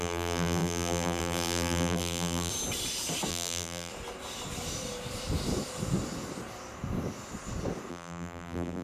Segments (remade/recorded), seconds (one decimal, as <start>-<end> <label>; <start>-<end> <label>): 0.0-2.5 remade; 2.5-3.3 recorded; 3.3-3.9 remade; 3.9-7.9 recorded; 7.9-8.8 remade